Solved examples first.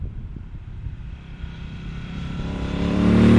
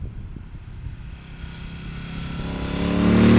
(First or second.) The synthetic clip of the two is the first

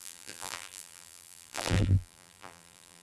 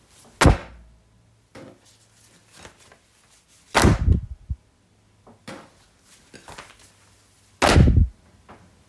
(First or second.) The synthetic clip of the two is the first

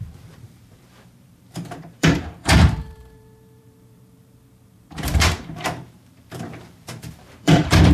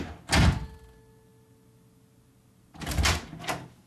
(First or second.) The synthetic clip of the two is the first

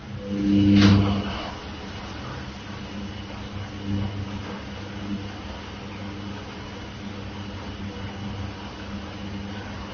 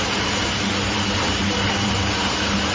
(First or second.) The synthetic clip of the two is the second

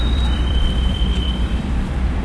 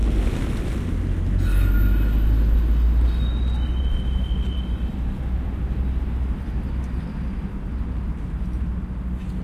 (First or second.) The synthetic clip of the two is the first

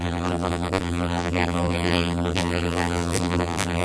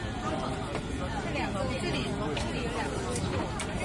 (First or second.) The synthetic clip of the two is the first